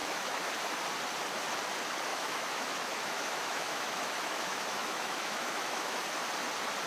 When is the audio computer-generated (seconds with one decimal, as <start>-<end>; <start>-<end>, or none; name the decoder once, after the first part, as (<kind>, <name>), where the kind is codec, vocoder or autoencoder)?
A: 0.0-0.5 (autoencoder, DAC-VAE); 2.1-6.1